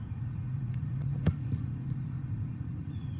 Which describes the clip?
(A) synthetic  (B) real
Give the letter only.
A